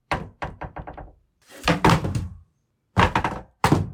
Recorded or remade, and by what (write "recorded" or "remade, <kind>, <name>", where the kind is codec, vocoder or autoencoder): remade, vocoder, BigVGAN v2